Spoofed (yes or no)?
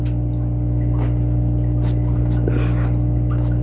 no